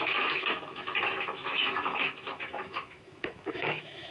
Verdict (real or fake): fake